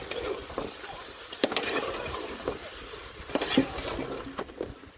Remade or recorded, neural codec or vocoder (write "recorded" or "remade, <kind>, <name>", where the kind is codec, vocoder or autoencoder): recorded